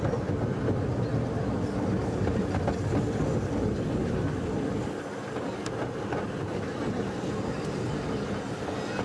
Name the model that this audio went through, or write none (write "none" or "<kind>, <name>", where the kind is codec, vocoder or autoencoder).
none